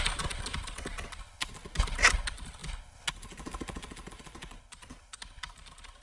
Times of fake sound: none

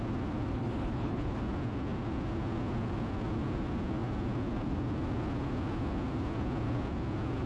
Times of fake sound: 0.5-1.4 (codec, HILCodec)

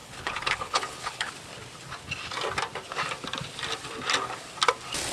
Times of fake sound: 0.0-1.3 (codec, HILCodec)

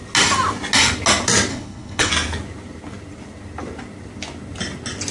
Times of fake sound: 1.5-2.1 (codec, HILCodec)

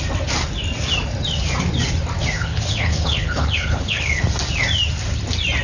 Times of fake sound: 2.4-4.2 (codec, HILCodec)

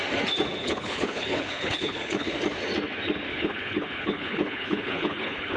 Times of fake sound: 0.6-2.3 (codec, HILCodec); 3.3-5.6

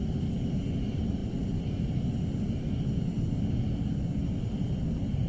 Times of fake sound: none

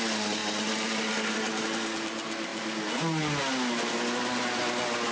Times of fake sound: none